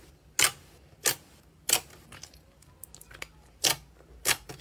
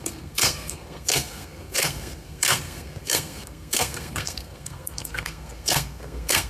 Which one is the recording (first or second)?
first